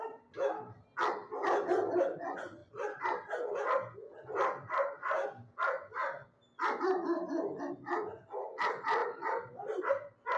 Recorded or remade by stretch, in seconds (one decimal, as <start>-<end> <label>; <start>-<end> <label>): 0.0-9.0 recorded; 9.0-9.9 remade; 9.9-10.4 recorded